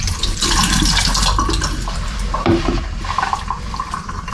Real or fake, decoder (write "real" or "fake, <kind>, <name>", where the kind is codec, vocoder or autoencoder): fake, vocoder, BigVGAN v2